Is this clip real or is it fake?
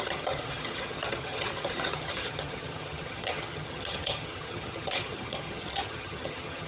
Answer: fake